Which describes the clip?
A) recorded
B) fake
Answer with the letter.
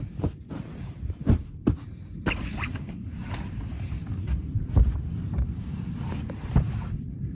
B